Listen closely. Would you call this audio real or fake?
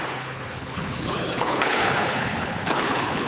fake